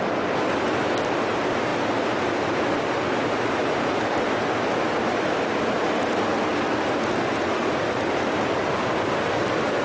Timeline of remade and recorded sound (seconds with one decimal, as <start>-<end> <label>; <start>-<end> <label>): 0.0-9.8 recorded